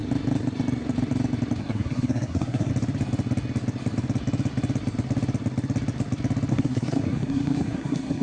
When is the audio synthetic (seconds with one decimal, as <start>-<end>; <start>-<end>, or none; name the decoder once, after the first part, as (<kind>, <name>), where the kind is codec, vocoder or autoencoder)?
1.6-2.7 (codec, SNAC); 6.5-8.2